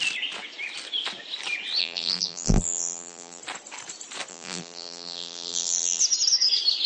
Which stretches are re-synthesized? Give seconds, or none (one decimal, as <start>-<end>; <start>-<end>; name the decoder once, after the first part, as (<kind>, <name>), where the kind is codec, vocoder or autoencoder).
1.8-3.4 (vocoder, BigVGAN v2); 4.3-6.0